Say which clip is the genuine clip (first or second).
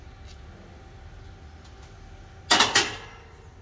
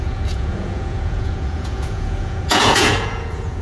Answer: first